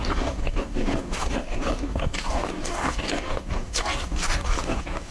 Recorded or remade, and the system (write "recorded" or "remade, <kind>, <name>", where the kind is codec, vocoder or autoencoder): remade, codec, DAC